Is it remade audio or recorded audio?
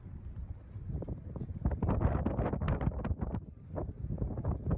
recorded